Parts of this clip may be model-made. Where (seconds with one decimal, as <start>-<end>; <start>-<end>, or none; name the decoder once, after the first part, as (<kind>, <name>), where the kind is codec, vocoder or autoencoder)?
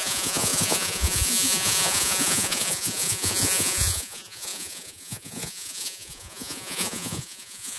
0.0-7.8 (vocoder, Vocos)